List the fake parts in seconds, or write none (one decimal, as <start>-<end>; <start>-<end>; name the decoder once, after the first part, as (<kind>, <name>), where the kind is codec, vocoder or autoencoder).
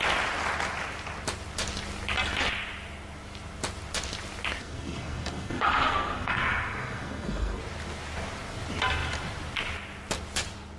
4.6-7.6 (codec, SNAC)